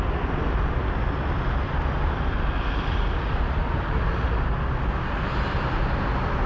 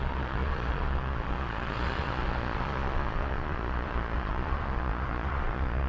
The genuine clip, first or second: first